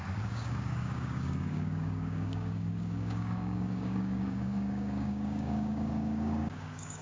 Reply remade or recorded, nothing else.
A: remade